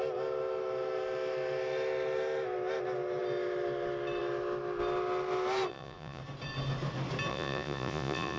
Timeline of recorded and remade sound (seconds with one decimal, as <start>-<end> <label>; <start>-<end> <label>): 0.0-5.7 recorded; 5.7-6.2 remade; 6.2-7.3 recorded; 7.3-8.4 remade